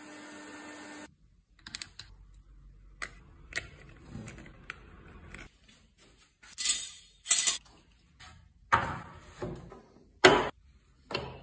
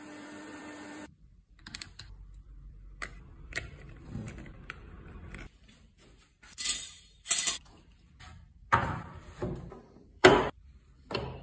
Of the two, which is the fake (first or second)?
second